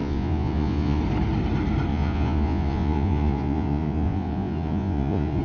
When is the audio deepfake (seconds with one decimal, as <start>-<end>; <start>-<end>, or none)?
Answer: 0.0-1.0; 1.9-5.4

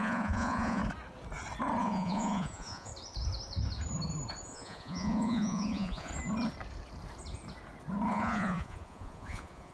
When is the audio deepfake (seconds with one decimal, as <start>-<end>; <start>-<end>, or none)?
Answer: 0.0-0.8; 1.8-2.9; 4.4-6.1; 8.1-9.7

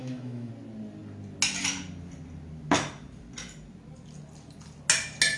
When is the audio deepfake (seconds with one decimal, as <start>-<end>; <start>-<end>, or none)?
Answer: 0.0-0.5